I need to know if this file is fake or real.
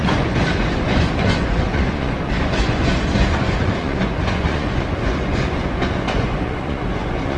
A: fake